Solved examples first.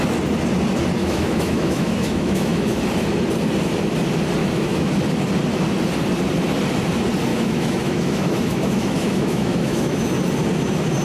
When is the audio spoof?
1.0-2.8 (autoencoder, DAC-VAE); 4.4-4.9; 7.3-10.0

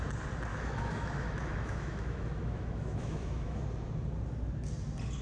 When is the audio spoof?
0.5-3.6 (autoencoder, DAC-VAE)